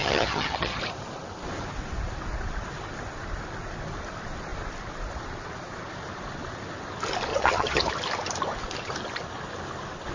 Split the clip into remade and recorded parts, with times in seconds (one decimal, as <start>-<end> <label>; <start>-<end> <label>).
0.0-0.8 remade; 0.8-7.3 recorded; 7.3-7.9 remade; 7.9-10.1 recorded